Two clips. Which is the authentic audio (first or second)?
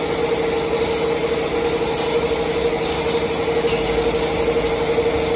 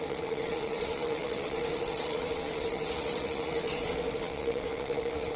first